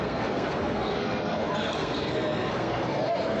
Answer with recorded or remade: remade